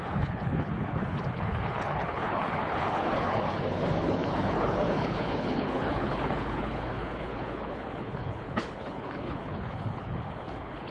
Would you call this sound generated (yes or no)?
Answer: yes